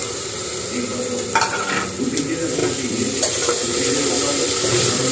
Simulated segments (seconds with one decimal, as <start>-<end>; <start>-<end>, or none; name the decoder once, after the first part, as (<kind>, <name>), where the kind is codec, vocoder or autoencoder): 2.6-5.1 (vocoder, BigVGAN v2)